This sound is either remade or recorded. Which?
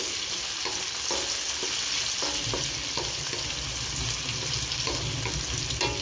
recorded